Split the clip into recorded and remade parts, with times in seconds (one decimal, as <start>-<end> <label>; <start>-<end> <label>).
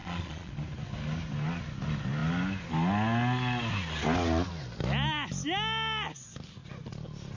0.0-0.5 remade; 0.5-7.4 recorded